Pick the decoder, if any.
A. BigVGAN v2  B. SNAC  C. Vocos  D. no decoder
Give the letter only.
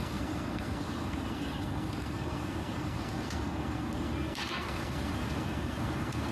B